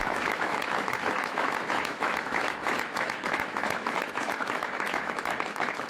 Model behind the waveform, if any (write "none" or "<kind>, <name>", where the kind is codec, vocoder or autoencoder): autoencoder, DAC-VAE